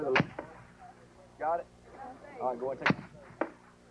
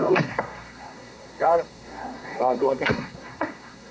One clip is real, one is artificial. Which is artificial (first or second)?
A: second